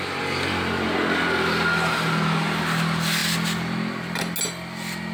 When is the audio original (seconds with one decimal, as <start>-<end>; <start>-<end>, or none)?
0.0-5.1